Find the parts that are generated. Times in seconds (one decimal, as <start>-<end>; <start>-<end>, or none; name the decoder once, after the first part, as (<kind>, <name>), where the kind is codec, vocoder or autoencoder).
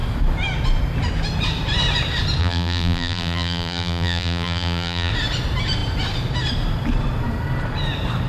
2.4-5.1 (vocoder, BigVGAN v2)